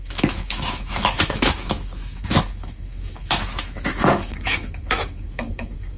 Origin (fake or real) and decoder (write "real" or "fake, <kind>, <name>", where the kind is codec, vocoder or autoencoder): fake, autoencoder, DAC-VAE